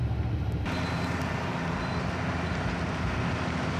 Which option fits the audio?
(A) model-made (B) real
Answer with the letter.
B